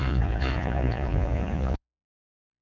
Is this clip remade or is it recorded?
remade